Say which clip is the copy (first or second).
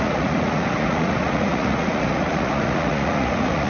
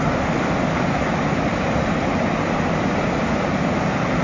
first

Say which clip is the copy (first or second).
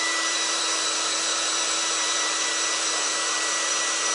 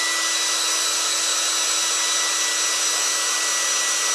first